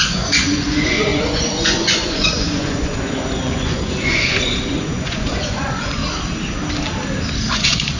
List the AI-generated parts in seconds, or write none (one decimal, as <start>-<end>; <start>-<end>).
0.0-6.0; 7.5-8.0